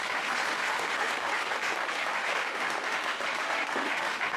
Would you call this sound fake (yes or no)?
yes